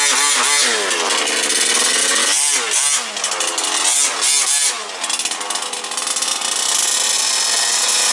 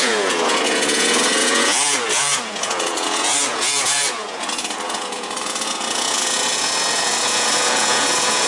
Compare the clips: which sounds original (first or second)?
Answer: first